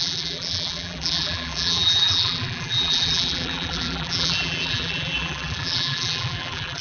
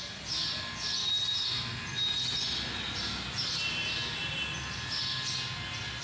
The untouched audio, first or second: second